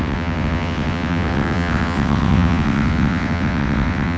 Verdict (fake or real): fake